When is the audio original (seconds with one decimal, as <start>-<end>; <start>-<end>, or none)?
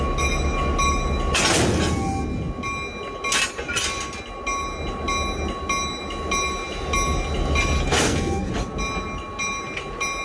0.0-7.9; 8.5-10.2